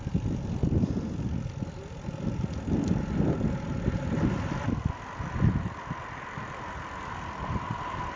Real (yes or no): yes